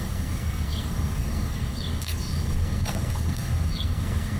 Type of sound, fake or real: fake